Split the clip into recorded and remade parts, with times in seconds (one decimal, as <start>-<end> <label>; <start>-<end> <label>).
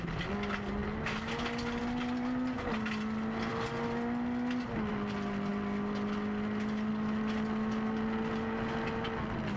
0.0-9.6 recorded